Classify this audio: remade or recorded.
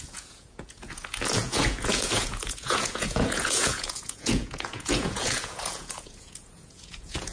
remade